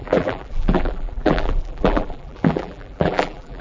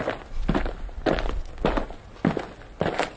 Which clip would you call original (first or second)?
second